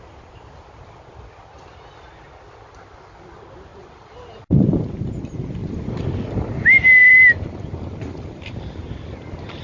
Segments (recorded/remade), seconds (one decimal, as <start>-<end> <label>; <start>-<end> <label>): 0.0-3.7 recorded; 3.7-5.0 remade; 5.0-7.0 recorded; 7.0-8.6 remade; 8.6-9.6 recorded